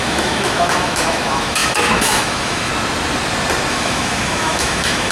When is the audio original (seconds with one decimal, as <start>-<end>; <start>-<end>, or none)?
2.7-3.7